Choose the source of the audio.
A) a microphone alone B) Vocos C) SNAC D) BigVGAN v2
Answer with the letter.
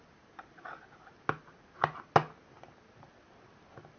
A